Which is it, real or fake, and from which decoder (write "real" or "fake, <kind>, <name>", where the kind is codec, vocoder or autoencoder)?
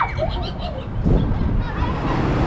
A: real